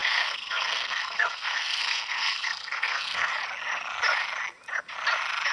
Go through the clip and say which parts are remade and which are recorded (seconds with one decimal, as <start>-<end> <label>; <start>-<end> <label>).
0.0-3.3 remade; 3.3-5.5 recorded